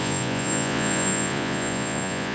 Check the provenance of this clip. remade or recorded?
remade